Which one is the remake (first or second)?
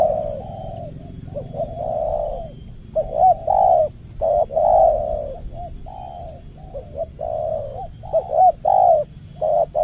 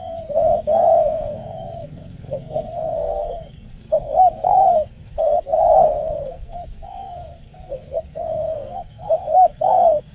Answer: second